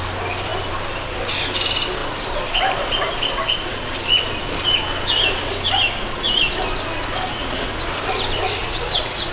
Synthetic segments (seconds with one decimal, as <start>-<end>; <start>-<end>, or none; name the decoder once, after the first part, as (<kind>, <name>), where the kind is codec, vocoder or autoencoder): 7.4-8.0 (vocoder, Vocos); 8.6-9.3